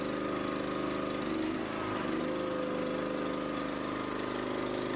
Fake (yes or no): no